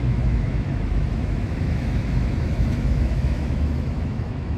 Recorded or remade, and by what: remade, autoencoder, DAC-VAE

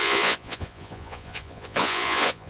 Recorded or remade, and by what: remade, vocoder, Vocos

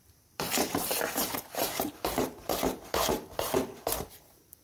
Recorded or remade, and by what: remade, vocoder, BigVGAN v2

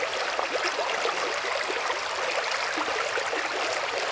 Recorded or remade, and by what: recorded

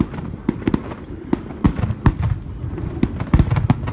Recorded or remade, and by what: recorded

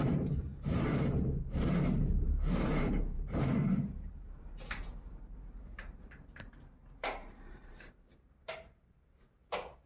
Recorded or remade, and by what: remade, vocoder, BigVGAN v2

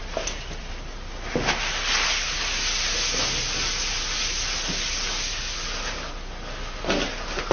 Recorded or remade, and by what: recorded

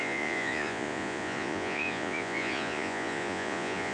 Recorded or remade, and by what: remade, vocoder, Vocos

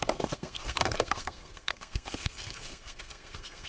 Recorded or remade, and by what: remade, codec, SNAC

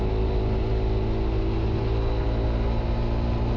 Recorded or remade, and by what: recorded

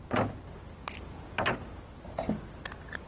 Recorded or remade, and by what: recorded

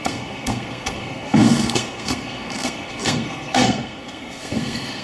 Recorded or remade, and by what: remade, codec, SNAC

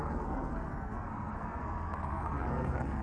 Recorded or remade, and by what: remade, codec, SNAC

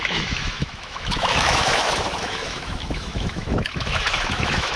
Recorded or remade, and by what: remade, autoencoder, DAC-VAE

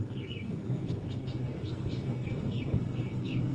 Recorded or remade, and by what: remade, codec, SNAC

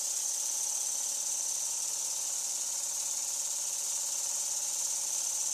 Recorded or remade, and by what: remade, vocoder, BigVGAN v2